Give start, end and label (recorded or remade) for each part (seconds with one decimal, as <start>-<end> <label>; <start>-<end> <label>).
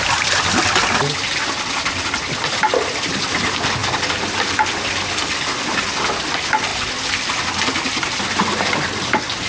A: 0.0-9.5 recorded